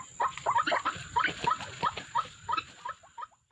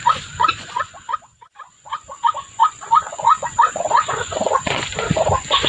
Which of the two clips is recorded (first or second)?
first